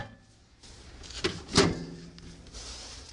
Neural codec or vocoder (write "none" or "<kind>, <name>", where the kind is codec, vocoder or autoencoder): none